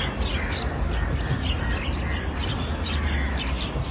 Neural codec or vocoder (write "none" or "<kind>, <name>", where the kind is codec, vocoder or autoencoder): none